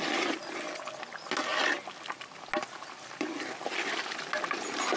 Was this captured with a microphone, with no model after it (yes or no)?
yes